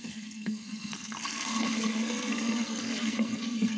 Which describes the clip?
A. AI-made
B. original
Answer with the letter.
A